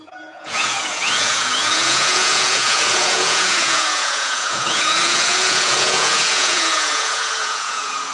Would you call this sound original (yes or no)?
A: no